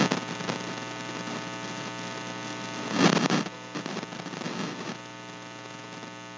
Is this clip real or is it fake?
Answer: real